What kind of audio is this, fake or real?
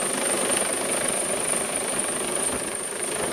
real